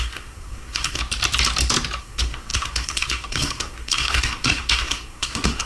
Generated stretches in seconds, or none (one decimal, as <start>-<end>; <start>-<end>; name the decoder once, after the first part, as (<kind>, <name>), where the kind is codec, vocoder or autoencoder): 0.0-1.0 (codec, SNAC); 2.0-5.7